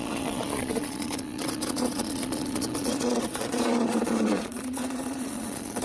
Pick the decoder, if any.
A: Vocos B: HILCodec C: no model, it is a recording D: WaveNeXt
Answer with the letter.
A